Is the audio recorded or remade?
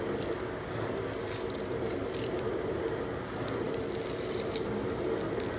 recorded